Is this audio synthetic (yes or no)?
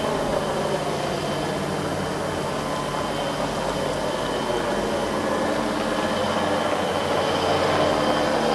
no